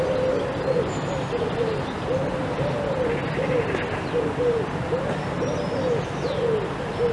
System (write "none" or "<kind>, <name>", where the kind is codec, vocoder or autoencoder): none